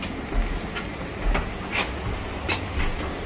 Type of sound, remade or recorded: recorded